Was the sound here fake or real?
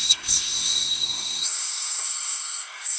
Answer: fake